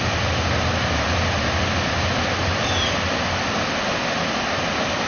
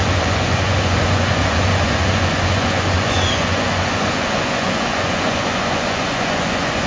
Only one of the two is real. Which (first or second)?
first